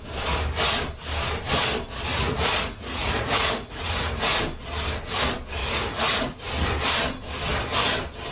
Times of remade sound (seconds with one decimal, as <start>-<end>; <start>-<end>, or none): 2.1-4.4; 5.6-6.5